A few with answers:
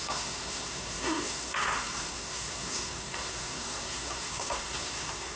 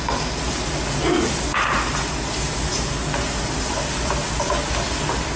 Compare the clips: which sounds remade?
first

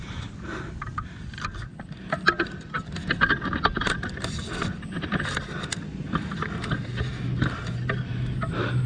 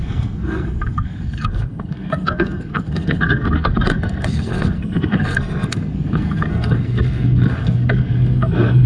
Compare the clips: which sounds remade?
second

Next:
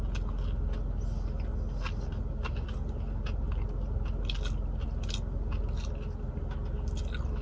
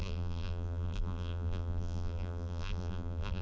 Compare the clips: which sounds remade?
second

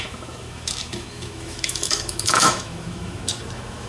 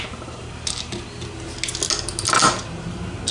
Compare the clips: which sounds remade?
first